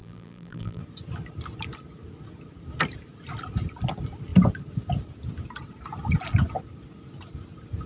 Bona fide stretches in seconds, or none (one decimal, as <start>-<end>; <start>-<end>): 0.8-7.9